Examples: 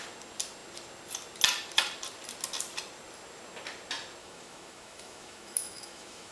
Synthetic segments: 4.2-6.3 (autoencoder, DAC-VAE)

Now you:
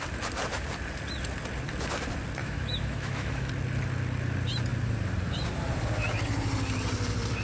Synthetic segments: 2.4-3.5 (autoencoder, DAC-VAE)

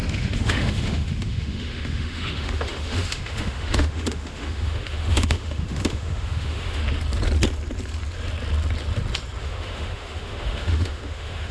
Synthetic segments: 0.0-6.8 (autoencoder, DAC-VAE); 9.4-11.5

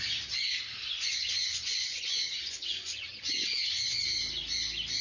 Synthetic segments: 0.9-3.1 (vocoder, Vocos)

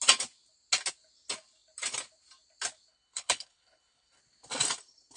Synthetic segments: 2.9-4.2 (codec, HILCodec)

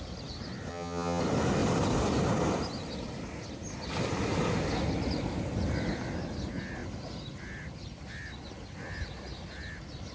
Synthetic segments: 0.7-1.2 (vocoder, HiFi-GAN)

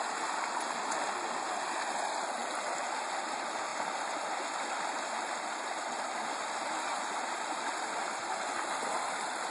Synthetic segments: none